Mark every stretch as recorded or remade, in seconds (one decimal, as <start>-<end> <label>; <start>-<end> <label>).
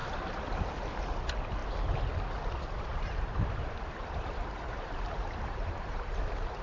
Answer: 0.0-2.9 recorded; 2.9-6.1 remade; 6.1-6.6 recorded